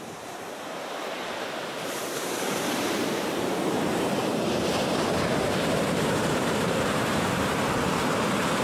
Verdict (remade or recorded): remade